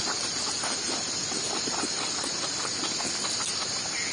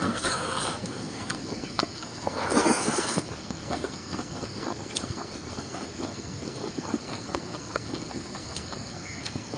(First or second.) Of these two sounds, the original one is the first